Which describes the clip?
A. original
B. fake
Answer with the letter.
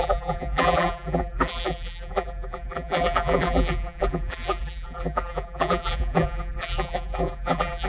B